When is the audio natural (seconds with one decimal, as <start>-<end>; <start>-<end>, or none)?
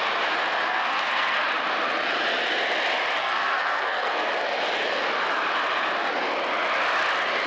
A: 0.0-0.7; 1.4-3.2; 4.3-7.5